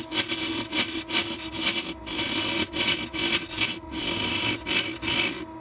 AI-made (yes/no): no